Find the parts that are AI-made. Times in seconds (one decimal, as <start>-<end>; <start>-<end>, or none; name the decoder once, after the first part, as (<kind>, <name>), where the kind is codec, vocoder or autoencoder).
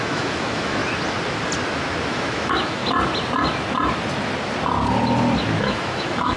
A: 0.0-0.8 (autoencoder, DAC-VAE); 2.1-2.8; 5.6-6.4